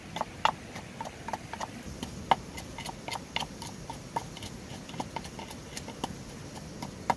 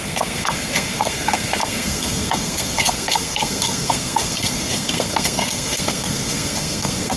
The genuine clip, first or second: first